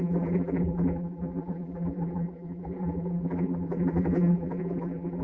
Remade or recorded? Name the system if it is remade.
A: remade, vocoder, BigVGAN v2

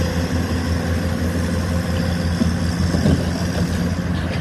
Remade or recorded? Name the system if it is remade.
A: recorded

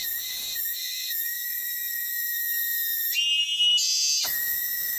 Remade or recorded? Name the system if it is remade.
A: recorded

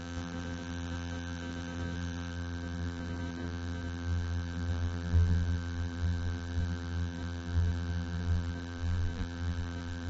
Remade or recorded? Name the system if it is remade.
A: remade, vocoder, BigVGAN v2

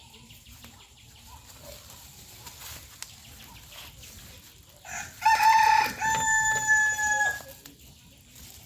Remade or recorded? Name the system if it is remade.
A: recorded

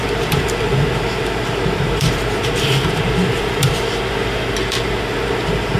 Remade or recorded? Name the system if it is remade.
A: remade, vocoder, BigVGAN v2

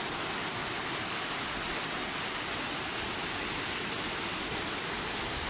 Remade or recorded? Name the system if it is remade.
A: recorded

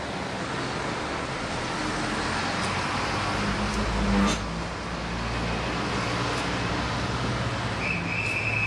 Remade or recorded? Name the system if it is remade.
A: recorded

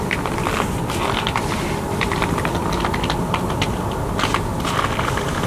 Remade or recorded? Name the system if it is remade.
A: recorded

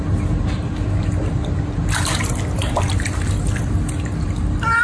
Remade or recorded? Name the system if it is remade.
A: remade, vocoder, BigVGAN v2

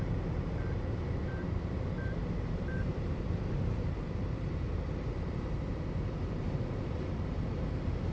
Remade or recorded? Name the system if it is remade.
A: remade, vocoder, BigVGAN v2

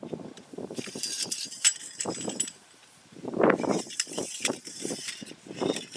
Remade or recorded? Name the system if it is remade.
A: remade, vocoder, BigVGAN v2